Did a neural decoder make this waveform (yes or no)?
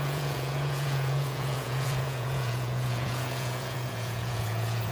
yes